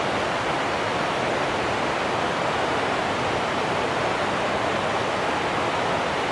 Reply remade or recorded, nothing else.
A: recorded